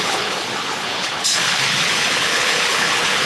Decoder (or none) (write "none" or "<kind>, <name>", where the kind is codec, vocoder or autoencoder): codec, HILCodec